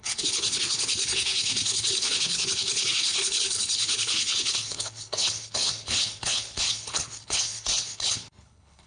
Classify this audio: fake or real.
fake